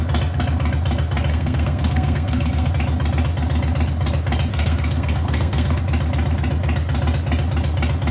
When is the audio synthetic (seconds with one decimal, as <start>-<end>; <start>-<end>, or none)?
1.3-2.7; 4.5-5.8